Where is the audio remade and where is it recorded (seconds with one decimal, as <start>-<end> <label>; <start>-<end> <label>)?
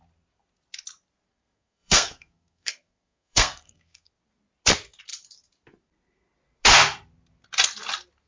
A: 0.0-1.3 recorded; 1.3-4.1 remade; 4.1-8.3 recorded